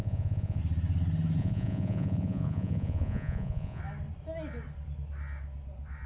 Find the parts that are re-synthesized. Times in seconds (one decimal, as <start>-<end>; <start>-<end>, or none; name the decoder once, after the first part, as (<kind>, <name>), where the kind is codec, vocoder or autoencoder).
0.0-0.6 (vocoder, Vocos); 1.4-3.8